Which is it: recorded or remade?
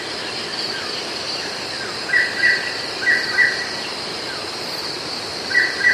recorded